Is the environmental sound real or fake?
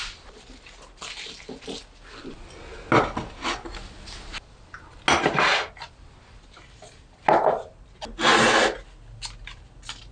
real